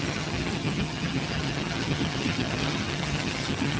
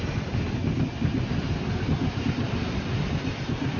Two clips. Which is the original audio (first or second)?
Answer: second